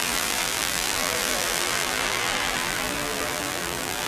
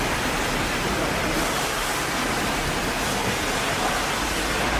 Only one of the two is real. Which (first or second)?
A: second